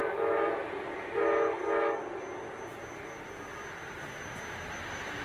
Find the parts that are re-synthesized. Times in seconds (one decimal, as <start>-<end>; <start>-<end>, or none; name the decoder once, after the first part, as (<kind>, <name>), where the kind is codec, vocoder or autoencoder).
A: 1.2-2.0 (autoencoder, DAC-VAE)